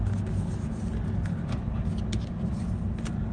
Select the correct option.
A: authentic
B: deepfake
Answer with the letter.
A